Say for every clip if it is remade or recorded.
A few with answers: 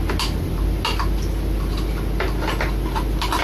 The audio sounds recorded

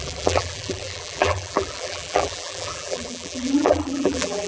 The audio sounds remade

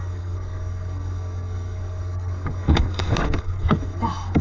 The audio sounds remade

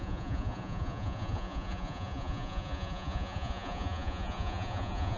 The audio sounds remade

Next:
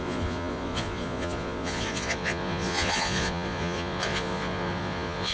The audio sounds remade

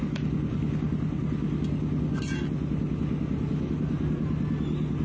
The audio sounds recorded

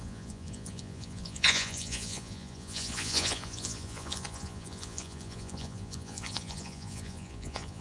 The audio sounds remade